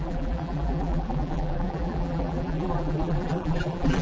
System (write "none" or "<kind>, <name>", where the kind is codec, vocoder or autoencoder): vocoder, BigVGAN v2